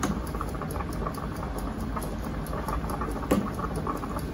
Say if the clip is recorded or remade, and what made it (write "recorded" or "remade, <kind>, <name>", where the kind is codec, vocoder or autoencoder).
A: recorded